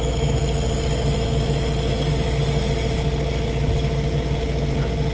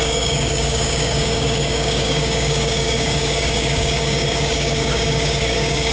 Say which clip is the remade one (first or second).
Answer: second